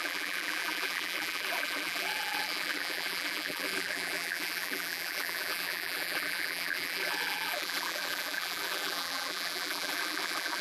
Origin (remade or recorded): remade